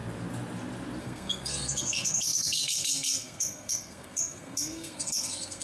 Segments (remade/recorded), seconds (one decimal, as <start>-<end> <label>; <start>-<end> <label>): 0.0-1.0 recorded; 1.0-5.6 remade